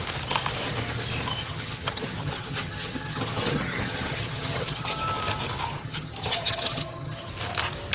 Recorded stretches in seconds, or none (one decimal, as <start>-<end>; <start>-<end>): 0.0-1.4; 5.0-5.8; 7.3-7.9